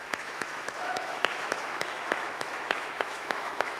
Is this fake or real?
fake